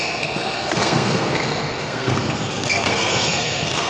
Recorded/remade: remade